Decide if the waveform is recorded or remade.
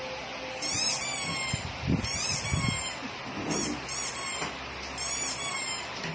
recorded